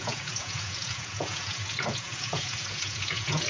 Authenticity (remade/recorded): remade